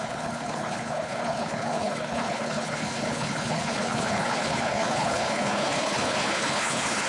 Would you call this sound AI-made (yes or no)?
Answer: yes